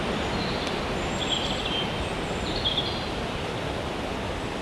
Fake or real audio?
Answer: real